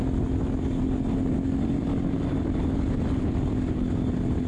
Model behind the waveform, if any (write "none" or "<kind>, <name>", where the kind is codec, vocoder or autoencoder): none